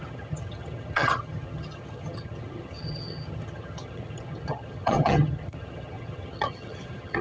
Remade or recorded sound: remade